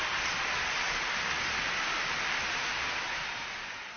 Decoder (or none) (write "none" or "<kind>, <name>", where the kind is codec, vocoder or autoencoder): none